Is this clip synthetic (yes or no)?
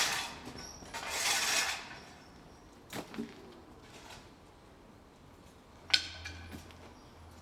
no